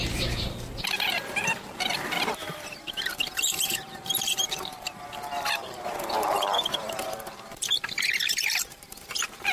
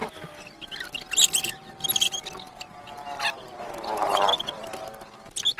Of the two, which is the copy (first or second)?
first